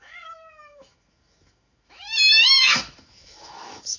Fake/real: fake